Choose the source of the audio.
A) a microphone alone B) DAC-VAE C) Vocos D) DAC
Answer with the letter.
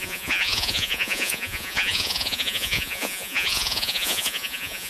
C